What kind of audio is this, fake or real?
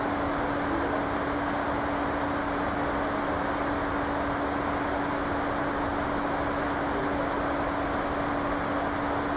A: real